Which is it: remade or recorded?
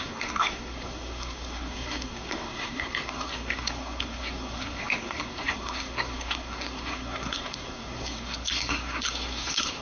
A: remade